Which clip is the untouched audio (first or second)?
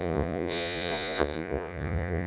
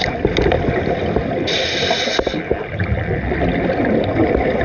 second